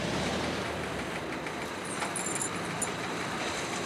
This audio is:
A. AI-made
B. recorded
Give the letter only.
A